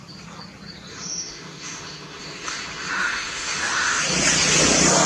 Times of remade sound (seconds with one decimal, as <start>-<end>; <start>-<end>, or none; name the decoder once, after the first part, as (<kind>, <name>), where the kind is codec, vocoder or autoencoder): 0.9-4.0 (autoencoder, DAC-VAE)

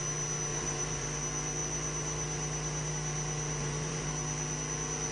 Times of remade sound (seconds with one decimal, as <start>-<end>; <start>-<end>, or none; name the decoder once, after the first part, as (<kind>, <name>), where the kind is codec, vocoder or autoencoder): 0.5-1.2 (vocoder, BigVGAN v2); 3.6-4.1

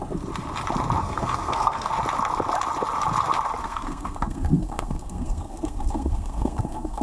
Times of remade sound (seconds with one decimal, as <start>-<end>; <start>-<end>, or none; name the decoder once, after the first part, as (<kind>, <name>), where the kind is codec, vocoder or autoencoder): 1.0-1.9 (codec, SNAC); 3.6-7.0

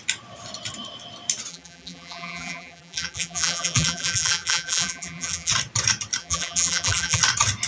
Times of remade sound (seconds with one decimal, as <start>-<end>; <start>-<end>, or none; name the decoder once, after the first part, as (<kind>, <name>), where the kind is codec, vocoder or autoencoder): 1.5-5.5 (vocoder, BigVGAN v2); 6.2-7.2

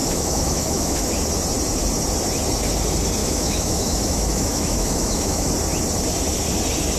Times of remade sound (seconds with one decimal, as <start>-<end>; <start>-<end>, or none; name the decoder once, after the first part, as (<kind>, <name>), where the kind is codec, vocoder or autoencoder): 0.0-1.1 (autoencoder, DAC-VAE); 3.2-5.5

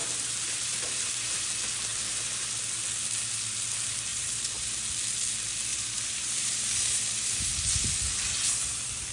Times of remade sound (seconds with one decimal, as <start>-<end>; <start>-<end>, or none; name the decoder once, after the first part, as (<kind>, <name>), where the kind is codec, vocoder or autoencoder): 0.0-1.5 (vocoder, BigVGAN v2); 1.9-2.5; 4.1-4.8; 5.7-6.7

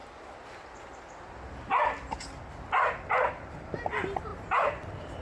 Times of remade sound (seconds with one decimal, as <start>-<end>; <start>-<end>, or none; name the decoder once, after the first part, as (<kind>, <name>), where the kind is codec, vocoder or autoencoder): none